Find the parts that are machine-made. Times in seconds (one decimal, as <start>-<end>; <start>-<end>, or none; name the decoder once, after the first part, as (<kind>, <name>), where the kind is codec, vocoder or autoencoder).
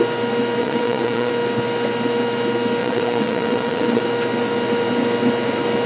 0.6-1.3 (vocoder, WaveNeXt); 2.8-4.0